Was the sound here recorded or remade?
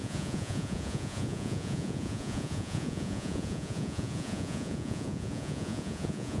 remade